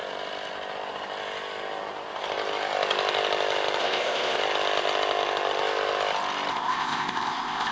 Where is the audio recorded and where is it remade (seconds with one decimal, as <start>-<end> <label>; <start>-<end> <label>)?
0.0-3.8 recorded; 3.8-4.4 remade; 4.4-6.5 recorded; 6.5-7.7 remade